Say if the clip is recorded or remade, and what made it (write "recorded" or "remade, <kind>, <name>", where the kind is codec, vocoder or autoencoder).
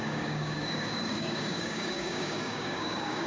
remade, codec, DAC